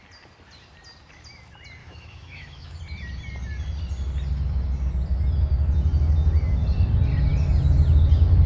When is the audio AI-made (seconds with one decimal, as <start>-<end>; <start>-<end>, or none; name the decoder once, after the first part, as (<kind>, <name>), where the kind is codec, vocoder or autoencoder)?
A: 1.8-2.8 (autoencoder, DAC-VAE)

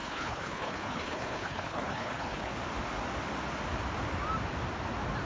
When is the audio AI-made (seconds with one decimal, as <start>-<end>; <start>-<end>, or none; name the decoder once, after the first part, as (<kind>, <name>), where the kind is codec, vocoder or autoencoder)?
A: 0.0-2.5 (codec, HILCodec)

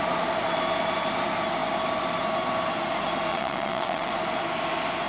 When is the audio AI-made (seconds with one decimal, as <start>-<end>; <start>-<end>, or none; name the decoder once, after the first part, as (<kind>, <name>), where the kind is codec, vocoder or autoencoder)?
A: 3.3-4.1 (vocoder, WaveNeXt)

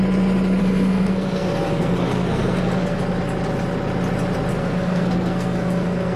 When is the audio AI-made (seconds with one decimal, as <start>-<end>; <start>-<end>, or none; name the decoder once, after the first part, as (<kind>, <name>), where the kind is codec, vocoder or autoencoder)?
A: 0.6-3.0 (codec, SNAC); 4.5-6.2